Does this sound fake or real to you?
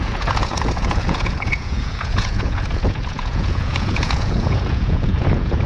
fake